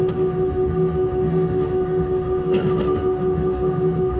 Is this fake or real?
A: fake